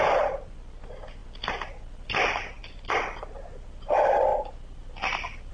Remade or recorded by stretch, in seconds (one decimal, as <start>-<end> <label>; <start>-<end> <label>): 0.0-2.6 recorded; 2.6-3.4 remade; 3.4-5.5 recorded